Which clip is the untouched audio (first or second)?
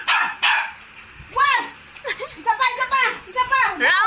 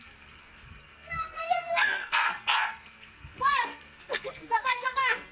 first